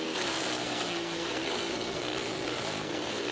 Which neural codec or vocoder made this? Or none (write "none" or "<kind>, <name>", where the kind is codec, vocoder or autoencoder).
codec, SNAC